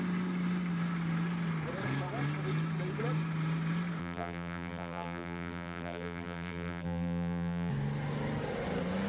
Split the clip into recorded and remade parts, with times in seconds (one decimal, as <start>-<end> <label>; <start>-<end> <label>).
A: 0.0-4.0 recorded; 4.0-7.7 remade; 7.7-9.1 recorded